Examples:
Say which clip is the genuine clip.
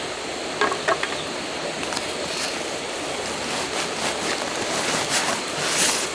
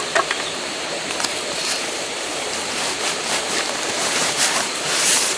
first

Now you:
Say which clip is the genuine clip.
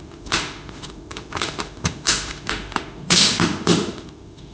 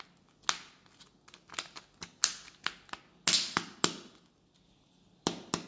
second